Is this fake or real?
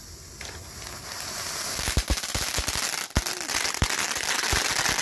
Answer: real